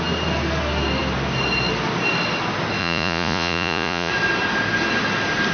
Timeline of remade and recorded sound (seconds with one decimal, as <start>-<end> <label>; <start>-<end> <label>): 0.0-2.8 recorded; 2.8-4.1 remade; 4.1-5.5 recorded